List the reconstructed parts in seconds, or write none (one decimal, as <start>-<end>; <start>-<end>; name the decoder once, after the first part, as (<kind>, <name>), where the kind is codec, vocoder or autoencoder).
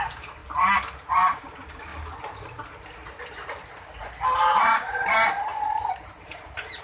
0.0-0.4 (vocoder, BigVGAN v2); 1.4-1.9; 4.0-6.8